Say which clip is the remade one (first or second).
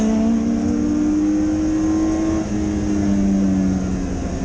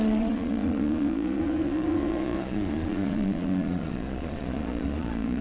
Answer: second